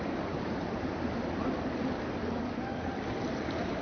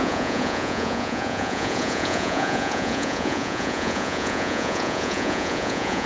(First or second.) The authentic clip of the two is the first